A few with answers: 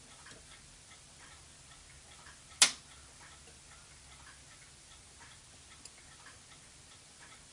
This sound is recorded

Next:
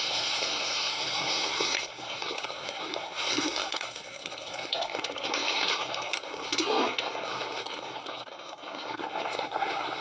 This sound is remade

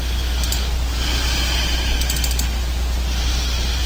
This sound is recorded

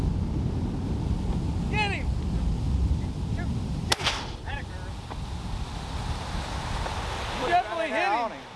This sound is recorded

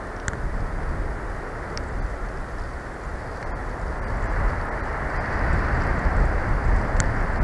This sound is recorded